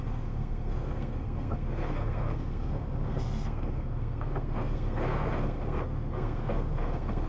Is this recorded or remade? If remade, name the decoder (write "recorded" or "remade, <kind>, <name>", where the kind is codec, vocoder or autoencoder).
remade, codec, SNAC